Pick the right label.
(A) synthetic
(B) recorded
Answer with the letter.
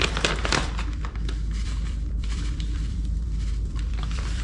A